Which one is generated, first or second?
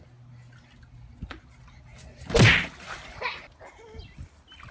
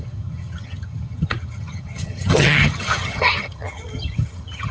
second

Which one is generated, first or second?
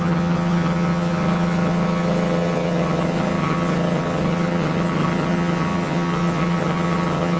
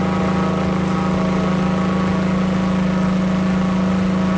first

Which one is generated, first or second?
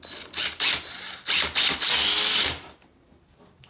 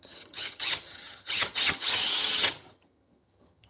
second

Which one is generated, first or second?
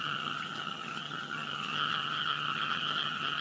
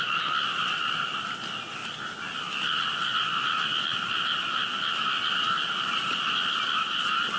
first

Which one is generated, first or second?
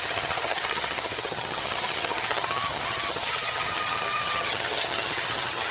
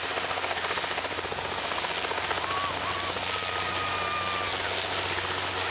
first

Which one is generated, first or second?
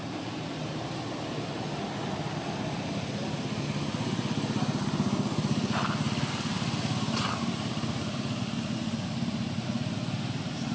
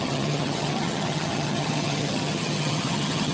second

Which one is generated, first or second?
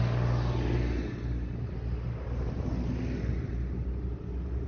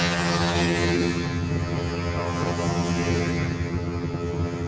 second